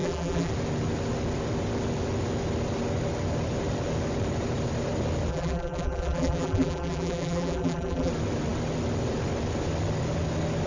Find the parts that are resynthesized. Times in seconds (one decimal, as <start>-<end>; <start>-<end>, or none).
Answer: 0.0-0.5; 5.3-8.1